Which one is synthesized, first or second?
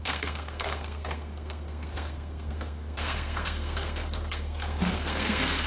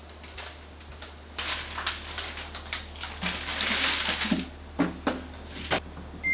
first